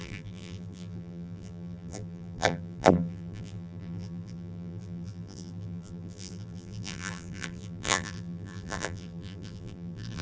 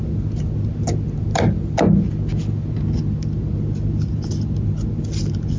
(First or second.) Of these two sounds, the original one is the second